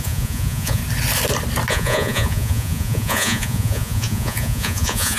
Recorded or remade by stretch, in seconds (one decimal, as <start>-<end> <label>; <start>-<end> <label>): 0.0-0.8 remade; 0.8-1.7 recorded; 1.7-5.2 remade